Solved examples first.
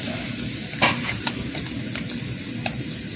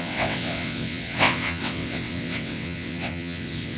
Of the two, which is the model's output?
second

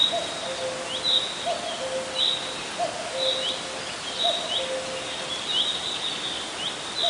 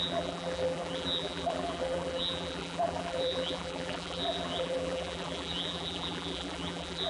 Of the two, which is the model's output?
second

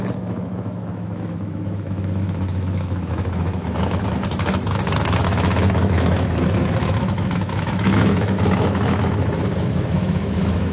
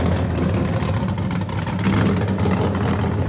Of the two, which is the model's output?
first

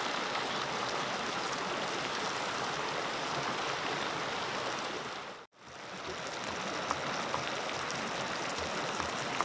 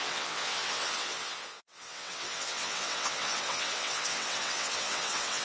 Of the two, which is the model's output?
second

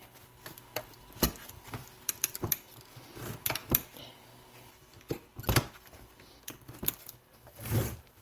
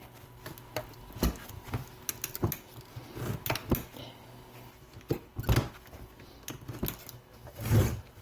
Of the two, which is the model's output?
first